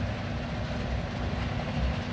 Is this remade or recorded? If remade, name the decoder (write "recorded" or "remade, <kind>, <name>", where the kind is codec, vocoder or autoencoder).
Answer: recorded